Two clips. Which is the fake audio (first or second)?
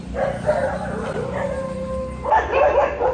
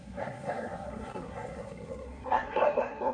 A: second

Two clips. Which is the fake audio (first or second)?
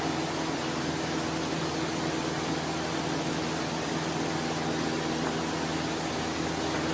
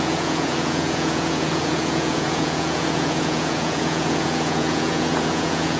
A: second